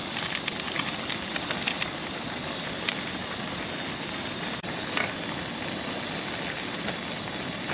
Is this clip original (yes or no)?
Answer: yes